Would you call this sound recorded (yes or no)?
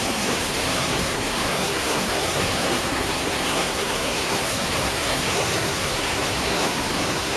no